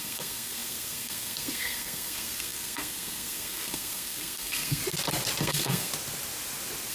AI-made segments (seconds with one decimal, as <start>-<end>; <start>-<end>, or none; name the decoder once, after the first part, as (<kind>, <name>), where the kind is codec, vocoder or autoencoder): 0.0-4.8 (codec, SNAC); 5.4-5.9